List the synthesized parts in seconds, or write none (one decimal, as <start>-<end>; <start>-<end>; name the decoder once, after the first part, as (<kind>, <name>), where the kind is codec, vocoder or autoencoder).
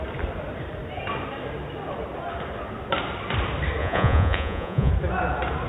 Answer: 3.8-4.9 (vocoder, Vocos)